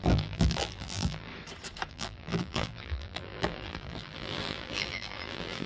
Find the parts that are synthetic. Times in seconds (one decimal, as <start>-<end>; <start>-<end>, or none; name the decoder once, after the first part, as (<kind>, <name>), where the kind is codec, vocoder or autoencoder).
0.0-1.3 (vocoder, BigVGAN v2); 1.9-5.7